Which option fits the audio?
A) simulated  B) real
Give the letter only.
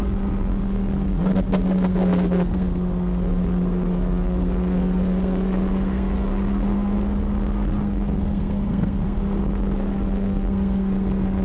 A